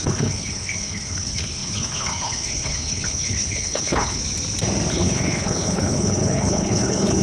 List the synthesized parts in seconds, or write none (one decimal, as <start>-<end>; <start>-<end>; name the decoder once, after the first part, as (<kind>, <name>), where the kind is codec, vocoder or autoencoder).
0.0-4.2 (codec, HILCodec); 4.9-7.2